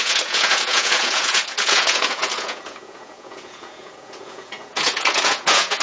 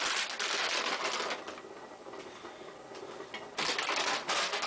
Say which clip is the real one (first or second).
second